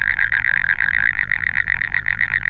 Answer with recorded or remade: remade